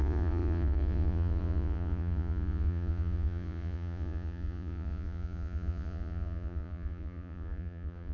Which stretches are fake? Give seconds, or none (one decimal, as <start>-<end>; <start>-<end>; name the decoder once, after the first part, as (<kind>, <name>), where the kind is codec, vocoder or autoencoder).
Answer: 0.0-8.1 (vocoder, Vocos)